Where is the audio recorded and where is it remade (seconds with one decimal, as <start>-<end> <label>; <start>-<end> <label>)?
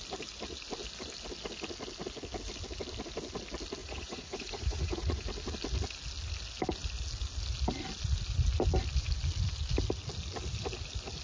0.0-3.8 recorded; 3.8-5.2 remade; 5.2-11.2 recorded